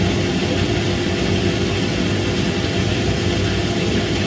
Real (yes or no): yes